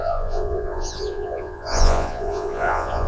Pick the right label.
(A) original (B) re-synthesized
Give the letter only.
B